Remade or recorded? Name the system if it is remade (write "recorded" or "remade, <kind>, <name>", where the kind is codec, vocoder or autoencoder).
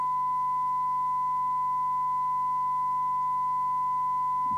recorded